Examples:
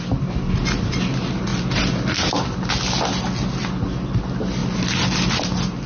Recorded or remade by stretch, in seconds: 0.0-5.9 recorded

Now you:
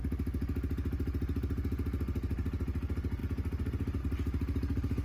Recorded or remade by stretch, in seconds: 0.0-5.0 recorded

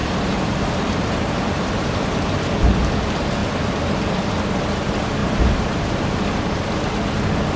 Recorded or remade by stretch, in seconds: 0.0-2.2 remade; 2.2-5.2 recorded; 5.2-5.8 remade; 5.8-7.6 recorded

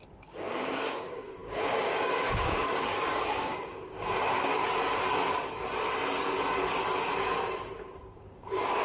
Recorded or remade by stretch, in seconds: 0.0-4.6 remade; 4.6-7.8 recorded; 7.8-8.8 remade

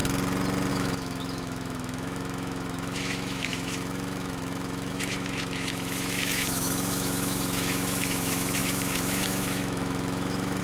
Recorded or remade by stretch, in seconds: 0.0-0.7 recorded; 0.7-10.6 remade

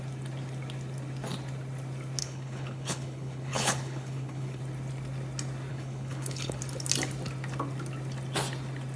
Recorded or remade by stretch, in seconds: 0.0-2.2 recorded; 2.2-4.6 remade; 4.6-5.7 recorded; 5.7-6.6 remade; 6.6-9.0 recorded